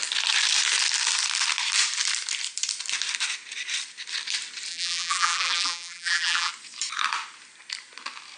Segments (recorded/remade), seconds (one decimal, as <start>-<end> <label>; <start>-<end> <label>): 0.0-4.7 recorded; 4.7-6.5 remade; 6.5-8.4 recorded